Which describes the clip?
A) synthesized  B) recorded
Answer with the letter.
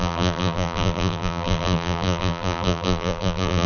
A